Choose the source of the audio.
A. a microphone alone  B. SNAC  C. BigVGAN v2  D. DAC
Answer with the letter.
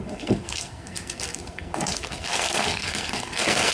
B